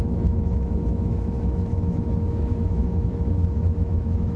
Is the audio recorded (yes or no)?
no